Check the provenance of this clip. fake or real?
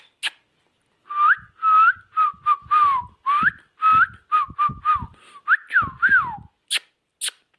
real